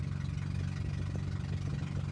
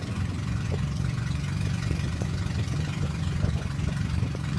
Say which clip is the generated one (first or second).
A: second